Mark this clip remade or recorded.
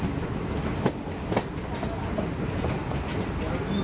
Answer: recorded